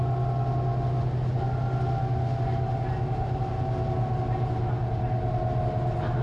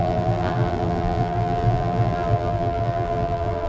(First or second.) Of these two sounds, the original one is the first